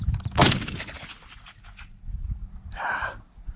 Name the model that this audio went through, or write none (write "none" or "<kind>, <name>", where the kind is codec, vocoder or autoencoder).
none